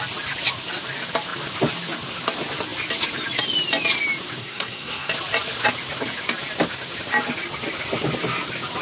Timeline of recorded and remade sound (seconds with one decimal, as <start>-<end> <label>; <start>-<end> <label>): 0.0-4.4 recorded; 4.4-5.1 remade; 5.1-8.8 recorded